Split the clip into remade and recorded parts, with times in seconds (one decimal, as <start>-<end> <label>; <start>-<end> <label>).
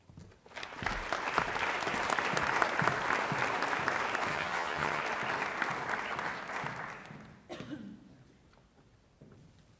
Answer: 0.0-4.3 recorded; 4.3-5.0 remade; 5.0-9.8 recorded